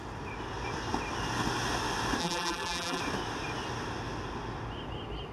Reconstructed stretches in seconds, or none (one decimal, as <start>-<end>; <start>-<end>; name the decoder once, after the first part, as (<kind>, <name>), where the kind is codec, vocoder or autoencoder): 2.2-3.0 (vocoder, BigVGAN v2)